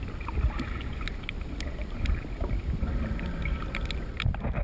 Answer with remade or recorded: recorded